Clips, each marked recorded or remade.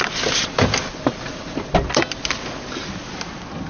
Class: recorded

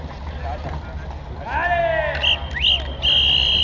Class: recorded